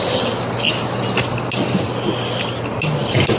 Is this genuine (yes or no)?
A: yes